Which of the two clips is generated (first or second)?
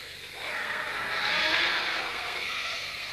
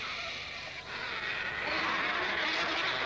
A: first